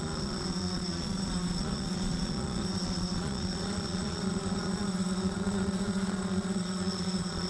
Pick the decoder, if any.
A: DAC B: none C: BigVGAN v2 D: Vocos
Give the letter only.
D